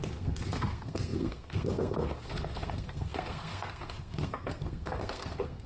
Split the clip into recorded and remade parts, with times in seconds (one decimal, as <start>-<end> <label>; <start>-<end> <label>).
0.0-5.7 remade